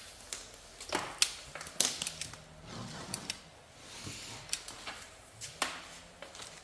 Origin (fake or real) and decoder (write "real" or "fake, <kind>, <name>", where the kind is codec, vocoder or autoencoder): real